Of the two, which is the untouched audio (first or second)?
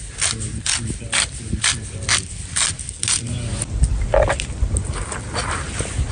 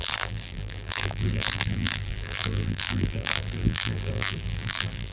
first